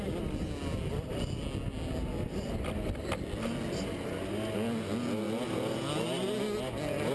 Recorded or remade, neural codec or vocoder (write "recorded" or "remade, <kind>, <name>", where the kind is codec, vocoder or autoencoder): recorded